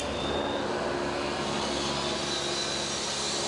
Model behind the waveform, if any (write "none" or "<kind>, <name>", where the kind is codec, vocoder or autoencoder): none